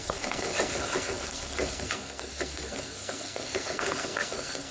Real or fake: fake